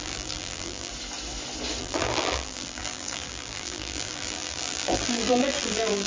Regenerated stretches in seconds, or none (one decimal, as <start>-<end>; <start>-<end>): 0.0-0.9; 1.8-6.1